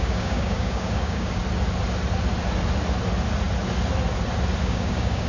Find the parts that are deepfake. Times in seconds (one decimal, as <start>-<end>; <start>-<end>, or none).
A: 0.0-1.4; 4.6-5.3